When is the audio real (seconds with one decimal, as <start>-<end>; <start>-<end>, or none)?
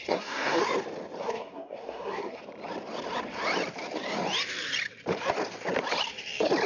0.6-1.2; 2.4-6.7